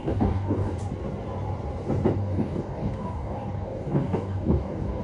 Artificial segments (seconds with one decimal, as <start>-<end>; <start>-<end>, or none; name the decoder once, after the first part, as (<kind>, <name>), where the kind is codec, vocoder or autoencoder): 0.0-0.8 (codec, DAC); 2.2-5.0